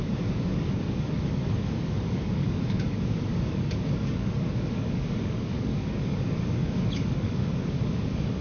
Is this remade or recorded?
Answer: remade